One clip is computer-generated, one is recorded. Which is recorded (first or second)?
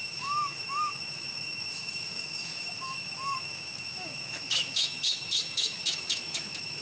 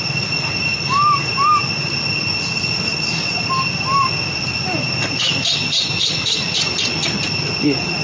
second